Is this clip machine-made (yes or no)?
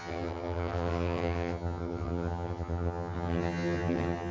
yes